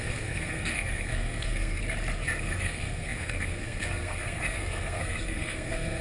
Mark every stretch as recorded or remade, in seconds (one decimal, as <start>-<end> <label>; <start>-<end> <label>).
0.0-1.8 remade; 1.8-2.4 recorded; 2.4-6.0 remade